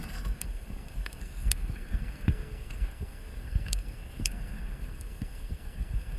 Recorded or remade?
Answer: remade